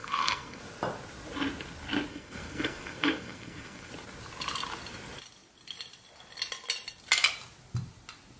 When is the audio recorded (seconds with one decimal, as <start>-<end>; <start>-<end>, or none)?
0.6-2.1; 3.9-8.4